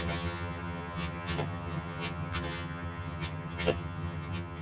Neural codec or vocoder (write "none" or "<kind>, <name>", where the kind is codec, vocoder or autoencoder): vocoder, HiFi-GAN